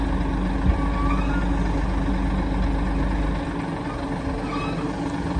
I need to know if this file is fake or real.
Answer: real